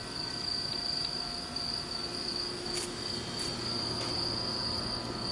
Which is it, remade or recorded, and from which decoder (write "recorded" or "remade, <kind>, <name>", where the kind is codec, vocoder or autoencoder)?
recorded